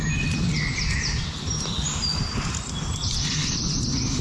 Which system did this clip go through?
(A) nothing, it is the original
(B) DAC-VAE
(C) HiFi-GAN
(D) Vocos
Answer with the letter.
A